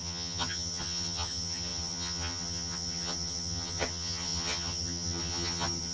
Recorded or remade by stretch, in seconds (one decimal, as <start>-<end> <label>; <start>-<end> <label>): 0.0-5.9 remade